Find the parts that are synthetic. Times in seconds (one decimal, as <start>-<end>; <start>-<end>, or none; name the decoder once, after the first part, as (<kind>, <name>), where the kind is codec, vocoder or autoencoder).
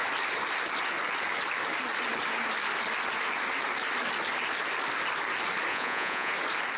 5.7-6.3 (vocoder, Vocos)